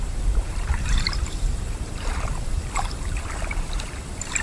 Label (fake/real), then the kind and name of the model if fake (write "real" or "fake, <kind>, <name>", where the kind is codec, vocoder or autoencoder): fake, vocoder, BigVGAN v2